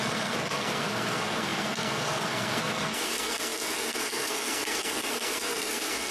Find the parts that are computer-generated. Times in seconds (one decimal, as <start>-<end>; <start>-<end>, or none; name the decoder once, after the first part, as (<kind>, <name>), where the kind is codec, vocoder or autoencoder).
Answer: 0.0-6.1 (codec, SNAC)